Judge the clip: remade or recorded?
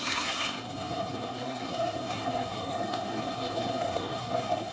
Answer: remade